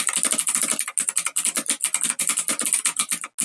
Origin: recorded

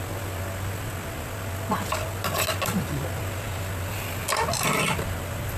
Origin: recorded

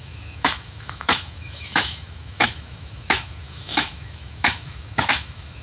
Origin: remade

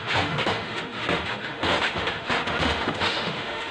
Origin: remade